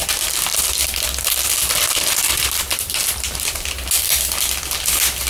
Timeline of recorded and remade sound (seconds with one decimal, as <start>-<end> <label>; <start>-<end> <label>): 0.0-0.5 recorded; 0.5-3.7 remade; 3.7-5.3 recorded